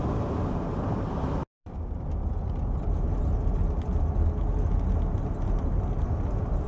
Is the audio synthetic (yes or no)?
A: no